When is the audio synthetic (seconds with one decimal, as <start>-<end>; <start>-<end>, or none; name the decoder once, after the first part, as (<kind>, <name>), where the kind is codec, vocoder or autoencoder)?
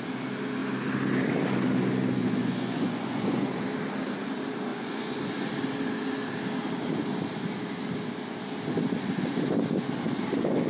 2.2-3.6 (vocoder, Vocos); 4.7-5.3